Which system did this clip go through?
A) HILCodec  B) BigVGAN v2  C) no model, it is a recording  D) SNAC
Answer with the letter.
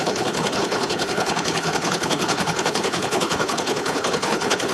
A